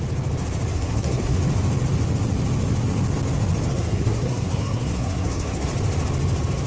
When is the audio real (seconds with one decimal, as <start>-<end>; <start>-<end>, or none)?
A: 0.0-0.7; 1.4-3.7; 5.7-6.7

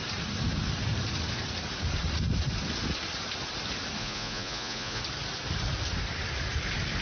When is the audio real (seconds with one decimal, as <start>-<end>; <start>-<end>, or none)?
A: 0.0-4.0; 5.0-7.0

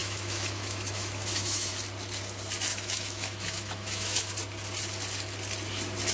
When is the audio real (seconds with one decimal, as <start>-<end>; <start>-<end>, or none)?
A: 1.7-2.7; 4.3-6.1

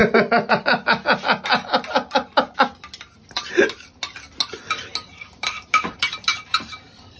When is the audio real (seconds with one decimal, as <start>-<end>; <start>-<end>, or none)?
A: 0.6-5.1

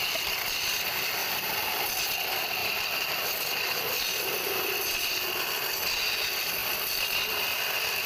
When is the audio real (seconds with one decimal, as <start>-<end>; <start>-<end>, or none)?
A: 0.0-1.2; 1.7-2.6; 5.5-6.6